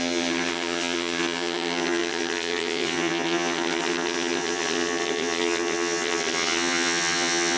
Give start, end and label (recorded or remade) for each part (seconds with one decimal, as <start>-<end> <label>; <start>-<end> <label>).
0.0-7.6 remade